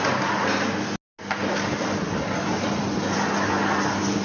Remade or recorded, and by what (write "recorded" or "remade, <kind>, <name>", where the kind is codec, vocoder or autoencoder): recorded